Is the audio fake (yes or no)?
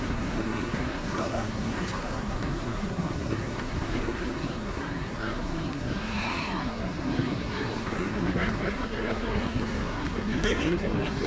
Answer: yes